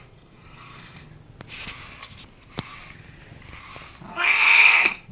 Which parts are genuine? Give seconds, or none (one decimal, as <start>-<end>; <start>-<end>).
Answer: 1.1-4.1